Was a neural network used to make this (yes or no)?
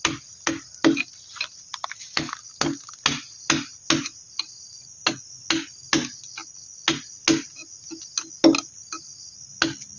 no